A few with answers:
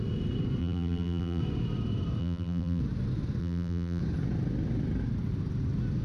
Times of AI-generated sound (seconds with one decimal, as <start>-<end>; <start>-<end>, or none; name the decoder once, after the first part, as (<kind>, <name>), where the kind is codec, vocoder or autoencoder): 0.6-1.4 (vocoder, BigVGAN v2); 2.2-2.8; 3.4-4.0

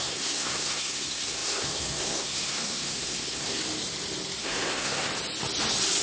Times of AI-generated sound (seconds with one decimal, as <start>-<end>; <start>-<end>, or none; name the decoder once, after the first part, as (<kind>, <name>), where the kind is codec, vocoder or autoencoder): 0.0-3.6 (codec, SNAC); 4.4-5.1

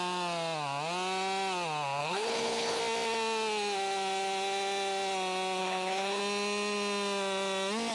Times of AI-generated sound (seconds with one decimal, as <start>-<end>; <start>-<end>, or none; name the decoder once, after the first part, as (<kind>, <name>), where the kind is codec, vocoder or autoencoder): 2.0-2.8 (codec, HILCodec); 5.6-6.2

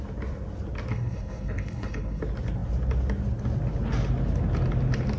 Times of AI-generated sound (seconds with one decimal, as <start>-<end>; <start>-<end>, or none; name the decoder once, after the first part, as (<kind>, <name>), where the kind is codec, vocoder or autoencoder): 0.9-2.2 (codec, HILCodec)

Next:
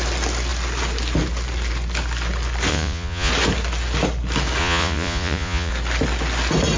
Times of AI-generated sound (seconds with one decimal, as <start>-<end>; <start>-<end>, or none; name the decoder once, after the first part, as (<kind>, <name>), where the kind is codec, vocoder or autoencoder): 2.7-3.3 (vocoder, Vocos); 4.6-5.7

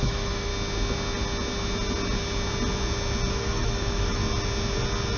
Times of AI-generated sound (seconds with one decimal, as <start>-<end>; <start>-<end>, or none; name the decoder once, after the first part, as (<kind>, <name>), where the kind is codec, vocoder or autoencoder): 0.0-0.5 (autoencoder, DAC-VAE); 3.3-4.2

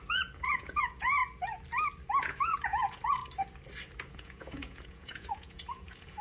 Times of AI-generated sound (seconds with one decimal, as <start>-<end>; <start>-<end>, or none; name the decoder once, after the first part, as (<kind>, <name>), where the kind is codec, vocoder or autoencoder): 0.0-1.2 (vocoder, Vocos); 2.2-3.2; 4.1-6.2

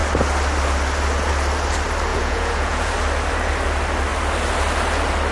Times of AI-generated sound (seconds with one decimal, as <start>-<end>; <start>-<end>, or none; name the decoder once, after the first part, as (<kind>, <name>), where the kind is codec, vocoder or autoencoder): 2.1-2.9 (vocoder, Vocos)